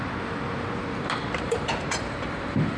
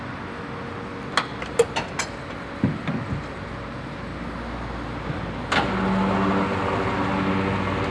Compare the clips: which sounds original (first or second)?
second